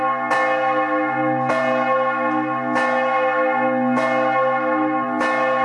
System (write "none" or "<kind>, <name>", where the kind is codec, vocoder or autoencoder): none